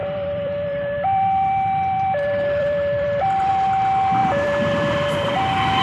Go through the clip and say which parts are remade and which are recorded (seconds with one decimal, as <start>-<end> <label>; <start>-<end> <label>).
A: 0.0-3.5 remade; 3.5-4.2 recorded; 4.2-5.3 remade; 5.3-5.8 recorded